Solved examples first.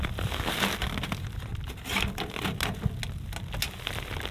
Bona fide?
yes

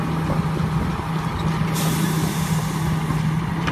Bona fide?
yes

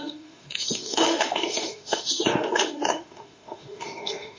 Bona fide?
no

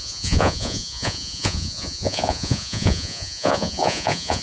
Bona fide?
no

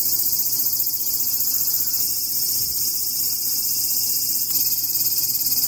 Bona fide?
no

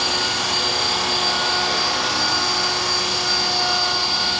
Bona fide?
yes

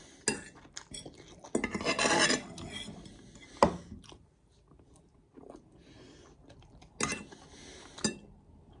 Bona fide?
yes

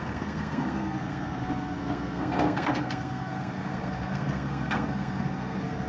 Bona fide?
no